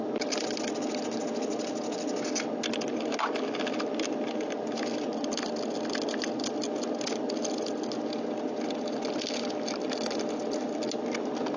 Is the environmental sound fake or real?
real